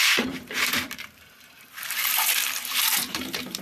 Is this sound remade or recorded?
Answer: remade